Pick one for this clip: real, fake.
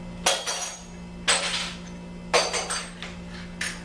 real